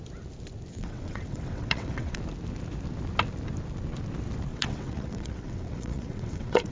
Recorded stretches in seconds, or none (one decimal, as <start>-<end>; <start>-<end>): 0.0-0.7; 2.2-4.5